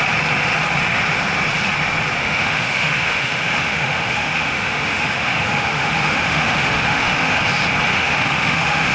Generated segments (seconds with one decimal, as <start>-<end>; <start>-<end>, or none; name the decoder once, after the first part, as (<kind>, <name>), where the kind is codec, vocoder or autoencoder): 2.2-7.4 (autoencoder, DAC-VAE); 7.9-8.9